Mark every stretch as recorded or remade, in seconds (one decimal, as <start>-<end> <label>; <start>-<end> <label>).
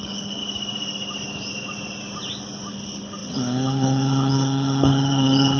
0.0-0.4 remade; 0.4-2.7 recorded; 2.7-5.6 remade